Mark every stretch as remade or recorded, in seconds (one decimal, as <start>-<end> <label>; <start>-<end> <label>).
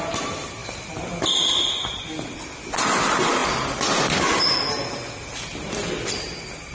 0.0-6.7 recorded